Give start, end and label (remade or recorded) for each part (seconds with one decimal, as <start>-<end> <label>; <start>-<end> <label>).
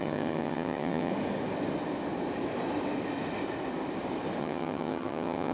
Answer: 0.0-1.1 remade; 1.1-4.4 recorded; 4.4-5.5 remade